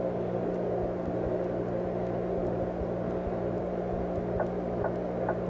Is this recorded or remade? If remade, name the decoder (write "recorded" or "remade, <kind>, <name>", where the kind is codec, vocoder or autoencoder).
recorded